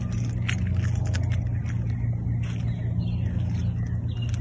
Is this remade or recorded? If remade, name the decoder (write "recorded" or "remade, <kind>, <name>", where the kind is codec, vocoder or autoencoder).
recorded